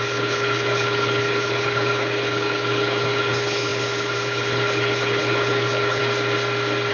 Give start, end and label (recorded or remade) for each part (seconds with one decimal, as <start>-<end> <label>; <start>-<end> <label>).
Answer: 0.0-6.0 remade; 6.0-6.9 recorded